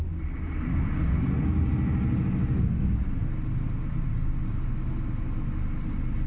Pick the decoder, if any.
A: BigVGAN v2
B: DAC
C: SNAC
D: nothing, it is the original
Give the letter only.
D